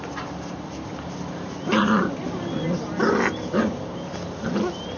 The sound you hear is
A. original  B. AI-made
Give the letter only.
A